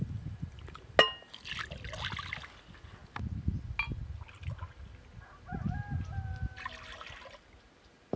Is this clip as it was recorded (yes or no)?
yes